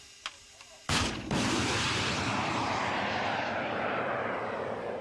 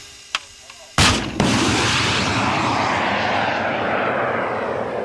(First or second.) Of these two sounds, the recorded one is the second